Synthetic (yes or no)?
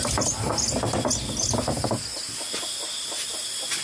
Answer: no